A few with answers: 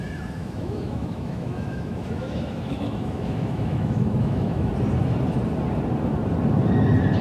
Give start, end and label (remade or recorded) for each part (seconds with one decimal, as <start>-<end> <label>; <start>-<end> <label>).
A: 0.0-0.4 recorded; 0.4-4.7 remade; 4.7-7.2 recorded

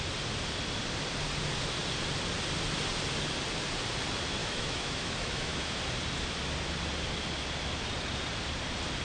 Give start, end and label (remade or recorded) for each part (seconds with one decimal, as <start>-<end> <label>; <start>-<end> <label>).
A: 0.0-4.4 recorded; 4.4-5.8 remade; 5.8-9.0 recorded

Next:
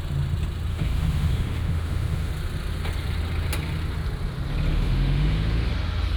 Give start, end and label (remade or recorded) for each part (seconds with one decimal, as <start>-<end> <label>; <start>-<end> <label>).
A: 0.0-0.7 recorded; 0.7-2.3 remade; 2.3-4.7 recorded; 4.7-5.7 remade; 5.7-6.2 recorded

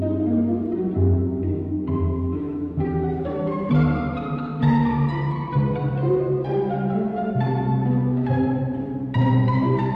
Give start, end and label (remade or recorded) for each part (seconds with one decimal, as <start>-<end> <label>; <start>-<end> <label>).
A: 0.0-1.2 recorded; 1.2-3.7 remade; 3.7-7.1 recorded; 7.1-8.6 remade; 8.6-9.9 recorded

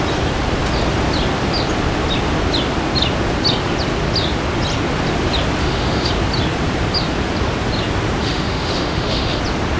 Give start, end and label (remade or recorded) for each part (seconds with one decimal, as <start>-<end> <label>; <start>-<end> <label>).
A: 0.0-5.6 recorded; 5.6-6.1 remade; 6.1-8.2 recorded; 8.2-9.4 remade; 9.4-9.8 recorded